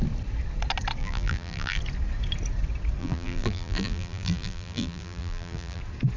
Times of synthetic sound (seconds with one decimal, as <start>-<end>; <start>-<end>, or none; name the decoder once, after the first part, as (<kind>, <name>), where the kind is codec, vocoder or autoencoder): 1.0-1.8 (vocoder, BigVGAN v2); 3.0-5.8